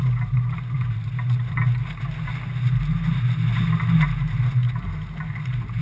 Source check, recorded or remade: recorded